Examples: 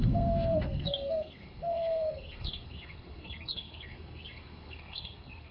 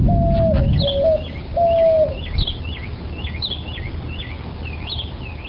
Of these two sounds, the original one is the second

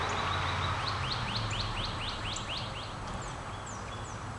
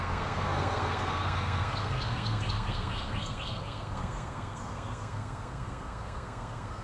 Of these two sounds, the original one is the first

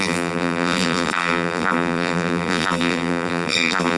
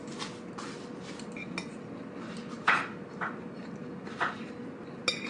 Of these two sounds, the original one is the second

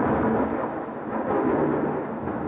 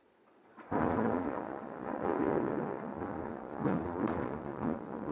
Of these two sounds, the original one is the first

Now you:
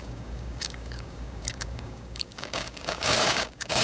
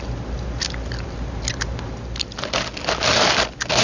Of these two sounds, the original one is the second